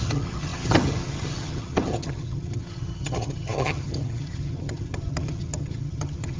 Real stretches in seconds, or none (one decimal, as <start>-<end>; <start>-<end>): none